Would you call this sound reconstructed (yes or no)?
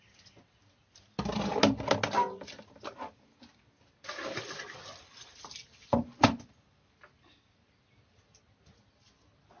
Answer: no